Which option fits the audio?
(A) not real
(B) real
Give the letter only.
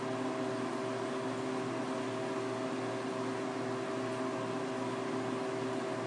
B